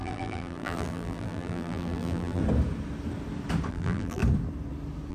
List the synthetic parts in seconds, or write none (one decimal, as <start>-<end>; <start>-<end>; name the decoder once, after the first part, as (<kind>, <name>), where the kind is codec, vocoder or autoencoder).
0.0-2.4 (vocoder, BigVGAN v2); 3.7-4.2